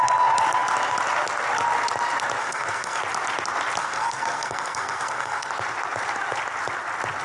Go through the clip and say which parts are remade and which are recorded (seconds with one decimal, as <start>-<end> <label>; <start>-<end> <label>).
0.0-2.4 recorded; 2.4-3.0 remade; 3.0-3.8 recorded; 3.8-5.5 remade; 5.5-7.2 recorded